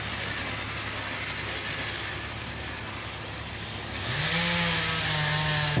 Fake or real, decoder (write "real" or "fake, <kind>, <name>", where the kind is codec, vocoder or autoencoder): real